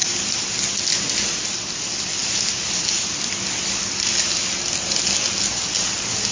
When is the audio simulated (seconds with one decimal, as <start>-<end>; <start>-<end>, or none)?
none